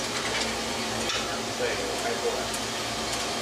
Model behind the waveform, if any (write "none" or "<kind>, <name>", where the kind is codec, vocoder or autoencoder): none